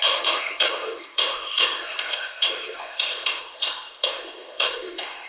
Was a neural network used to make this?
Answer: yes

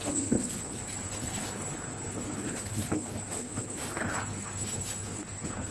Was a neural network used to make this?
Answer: yes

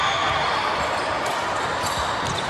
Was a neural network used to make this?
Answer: no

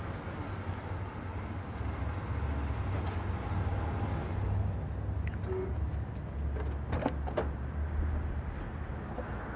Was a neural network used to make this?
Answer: no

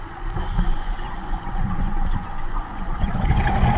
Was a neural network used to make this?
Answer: yes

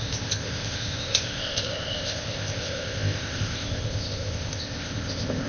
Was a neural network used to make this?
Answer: yes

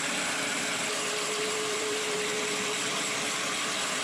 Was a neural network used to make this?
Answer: yes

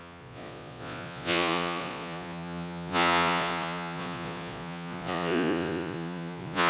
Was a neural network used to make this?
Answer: yes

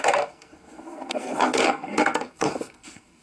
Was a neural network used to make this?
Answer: yes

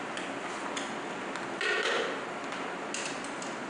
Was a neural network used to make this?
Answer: no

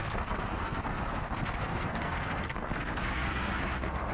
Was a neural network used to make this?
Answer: yes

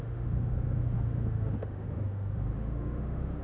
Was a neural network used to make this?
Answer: yes